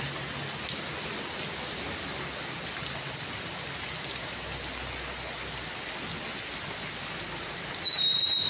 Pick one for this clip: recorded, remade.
recorded